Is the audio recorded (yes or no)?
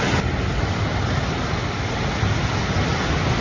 yes